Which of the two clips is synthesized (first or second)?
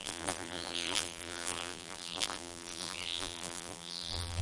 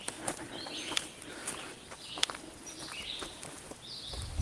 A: first